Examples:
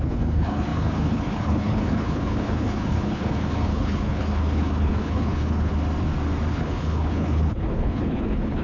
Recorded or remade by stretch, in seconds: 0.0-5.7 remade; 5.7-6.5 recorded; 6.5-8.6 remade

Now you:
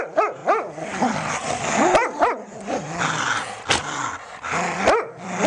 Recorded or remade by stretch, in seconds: 0.0-5.5 recorded

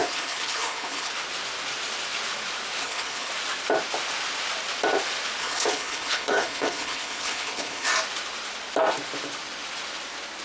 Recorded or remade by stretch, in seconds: 0.0-1.1 remade; 1.1-2.8 recorded; 2.8-3.3 remade; 3.3-5.4 recorded; 5.4-7.9 remade; 7.9-10.4 recorded

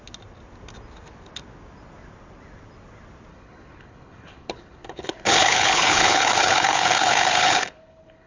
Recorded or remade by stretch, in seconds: 0.0-3.3 recorded; 3.3-8.3 remade

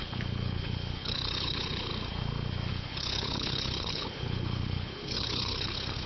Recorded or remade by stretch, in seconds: 0.0-1.9 remade; 1.9-2.7 recorded; 2.7-6.1 remade

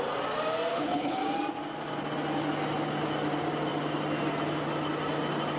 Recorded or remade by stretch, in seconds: 0.0-0.7 recorded; 0.7-1.2 remade; 1.2-5.6 recorded

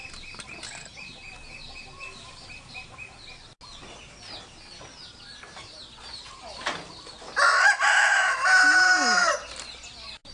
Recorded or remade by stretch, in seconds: 0.0-10.3 recorded

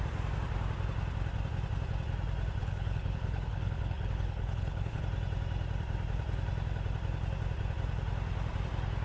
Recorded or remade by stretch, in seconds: 0.0-2.6 recorded; 2.6-5.0 remade; 5.0-9.0 recorded